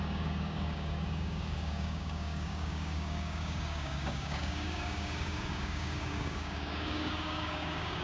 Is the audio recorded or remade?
remade